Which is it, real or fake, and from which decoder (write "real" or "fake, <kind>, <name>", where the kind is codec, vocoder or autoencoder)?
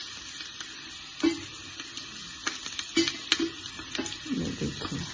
real